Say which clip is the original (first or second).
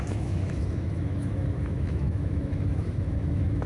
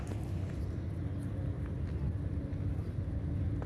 second